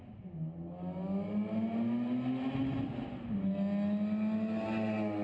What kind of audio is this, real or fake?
real